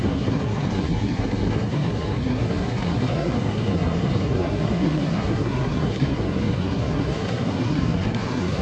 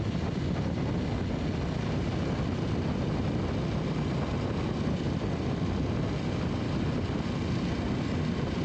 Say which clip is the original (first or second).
second